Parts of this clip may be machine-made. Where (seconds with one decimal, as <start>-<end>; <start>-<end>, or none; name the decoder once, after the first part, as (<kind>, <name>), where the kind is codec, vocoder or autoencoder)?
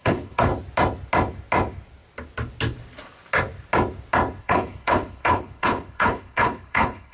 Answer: 0.0-0.5 (codec, HILCodec); 4.4-7.1